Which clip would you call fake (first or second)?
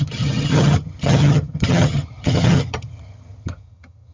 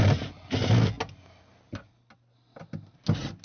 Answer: first